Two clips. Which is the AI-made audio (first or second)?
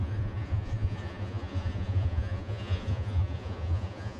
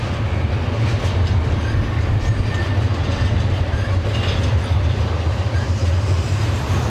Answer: first